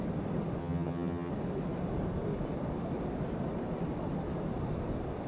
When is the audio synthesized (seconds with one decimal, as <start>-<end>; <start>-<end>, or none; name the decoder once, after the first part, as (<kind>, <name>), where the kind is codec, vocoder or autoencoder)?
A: 0.6-1.3 (vocoder, HiFi-GAN)